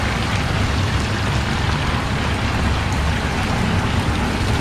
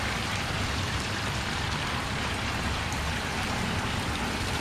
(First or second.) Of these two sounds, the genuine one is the first